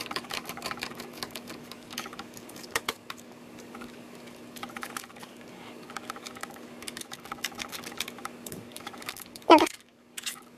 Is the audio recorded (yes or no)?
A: no